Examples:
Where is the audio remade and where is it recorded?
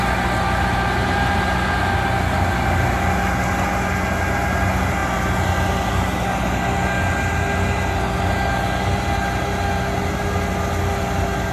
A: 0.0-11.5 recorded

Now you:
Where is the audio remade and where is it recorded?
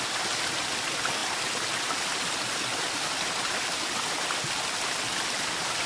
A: 0.0-5.9 recorded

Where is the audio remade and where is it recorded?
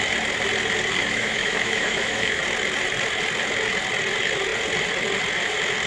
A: 0.0-1.0 recorded; 1.0-2.4 remade; 2.4-5.9 recorded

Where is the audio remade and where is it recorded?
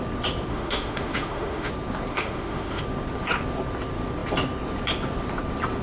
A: 0.0-0.5 recorded; 0.5-1.7 remade; 1.7-2.1 recorded; 2.1-2.8 remade; 2.8-5.8 recorded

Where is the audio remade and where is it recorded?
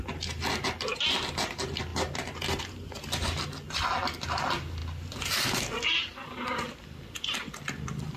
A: 0.0-8.2 recorded